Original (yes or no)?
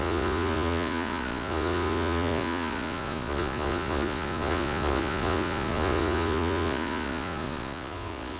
no